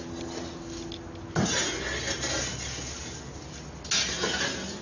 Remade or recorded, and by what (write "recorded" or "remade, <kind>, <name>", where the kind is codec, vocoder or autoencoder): recorded